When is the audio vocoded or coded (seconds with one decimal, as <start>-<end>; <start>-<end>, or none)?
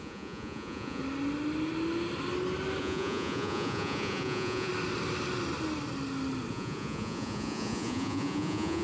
0.0-1.0; 2.8-4.7; 6.5-8.8